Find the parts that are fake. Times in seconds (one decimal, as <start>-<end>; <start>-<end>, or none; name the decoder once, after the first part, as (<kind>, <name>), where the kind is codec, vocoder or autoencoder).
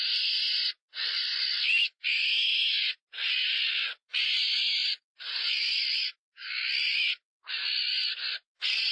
none